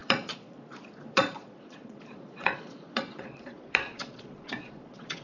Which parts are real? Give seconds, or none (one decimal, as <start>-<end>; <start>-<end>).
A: none